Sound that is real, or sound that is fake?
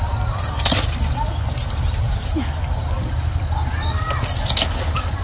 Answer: real